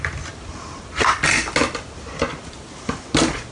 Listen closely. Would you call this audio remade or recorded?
recorded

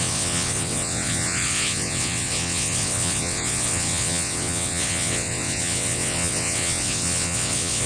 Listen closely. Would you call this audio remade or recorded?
remade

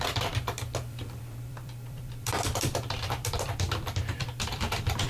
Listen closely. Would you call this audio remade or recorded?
remade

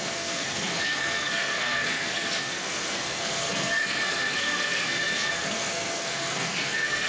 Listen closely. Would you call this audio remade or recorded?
remade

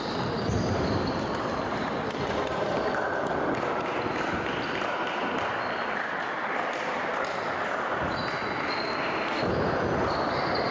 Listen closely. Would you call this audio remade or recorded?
recorded